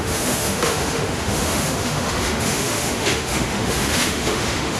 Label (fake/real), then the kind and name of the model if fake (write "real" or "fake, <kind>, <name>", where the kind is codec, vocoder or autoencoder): fake, autoencoder, DAC-VAE